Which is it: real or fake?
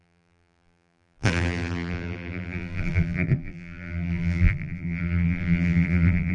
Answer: fake